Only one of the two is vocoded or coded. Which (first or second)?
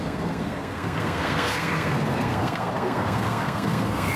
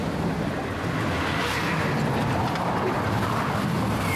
first